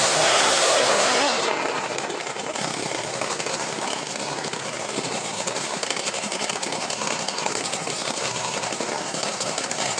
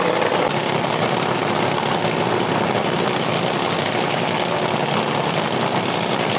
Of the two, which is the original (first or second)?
second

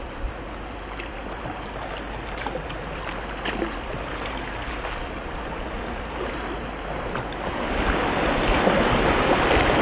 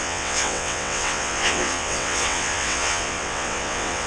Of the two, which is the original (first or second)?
first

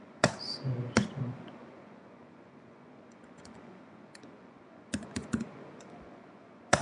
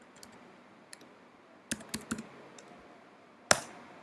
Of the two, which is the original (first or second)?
second